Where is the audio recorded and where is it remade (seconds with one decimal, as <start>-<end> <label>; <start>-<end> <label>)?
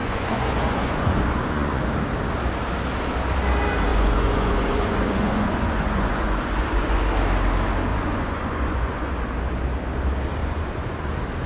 0.0-1.8 remade; 1.8-3.9 recorded; 3.9-7.0 remade; 7.0-7.9 recorded; 7.9-9.1 remade; 9.1-10.4 recorded; 10.4-11.1 remade; 11.1-11.5 recorded